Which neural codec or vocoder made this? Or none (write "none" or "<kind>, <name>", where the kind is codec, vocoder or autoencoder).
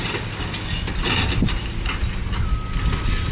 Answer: none